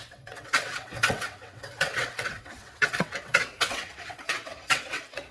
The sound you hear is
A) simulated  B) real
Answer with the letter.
A